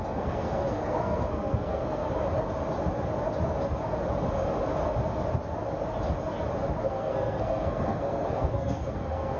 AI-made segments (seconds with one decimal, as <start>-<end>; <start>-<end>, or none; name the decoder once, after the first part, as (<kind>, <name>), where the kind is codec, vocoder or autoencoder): 0.0-2.0 (codec, SNAC); 6.8-9.4